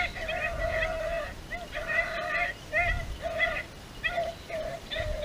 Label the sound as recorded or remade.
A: recorded